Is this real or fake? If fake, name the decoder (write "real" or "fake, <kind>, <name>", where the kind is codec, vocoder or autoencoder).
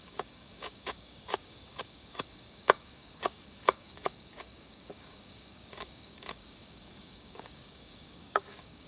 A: fake, codec, DAC